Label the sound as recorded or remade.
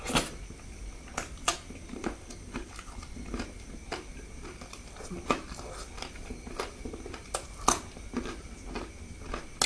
recorded